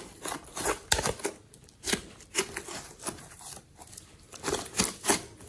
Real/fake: real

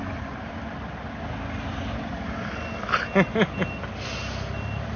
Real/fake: real